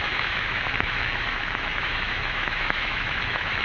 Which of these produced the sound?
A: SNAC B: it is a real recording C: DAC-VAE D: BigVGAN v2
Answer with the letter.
C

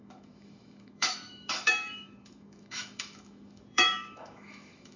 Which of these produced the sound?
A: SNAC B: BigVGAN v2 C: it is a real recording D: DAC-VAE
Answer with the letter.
D